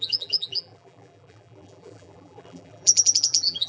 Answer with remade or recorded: remade